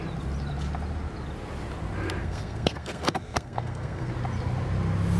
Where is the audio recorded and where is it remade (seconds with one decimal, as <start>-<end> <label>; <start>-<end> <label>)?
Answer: 0.0-2.2 recorded; 2.2-4.1 remade; 4.1-5.2 recorded